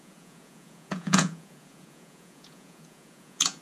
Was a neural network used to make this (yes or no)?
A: yes